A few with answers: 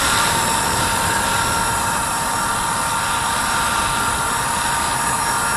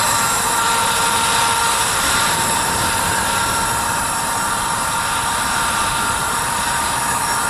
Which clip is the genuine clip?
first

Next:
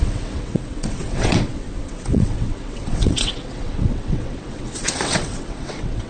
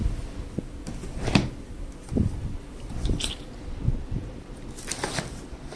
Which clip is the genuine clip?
second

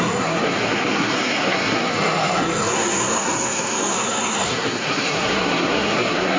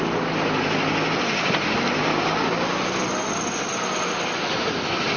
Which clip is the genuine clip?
second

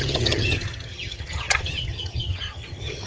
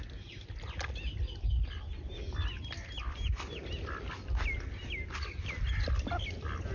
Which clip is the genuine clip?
second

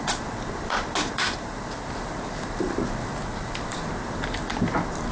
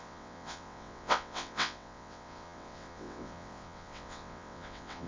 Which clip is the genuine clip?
first